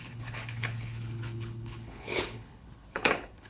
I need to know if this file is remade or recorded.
remade